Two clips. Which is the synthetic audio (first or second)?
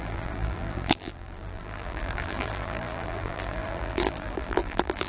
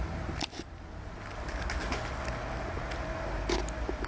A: first